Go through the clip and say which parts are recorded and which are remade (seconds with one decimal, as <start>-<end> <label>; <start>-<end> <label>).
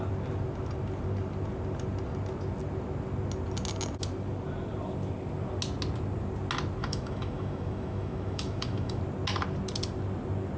0.0-6.8 recorded; 6.8-9.0 remade; 9.0-10.6 recorded